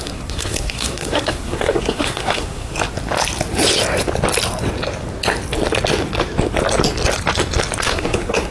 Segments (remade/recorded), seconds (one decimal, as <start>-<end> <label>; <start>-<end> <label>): 0.0-2.7 remade; 2.7-7.8 recorded; 7.8-8.5 remade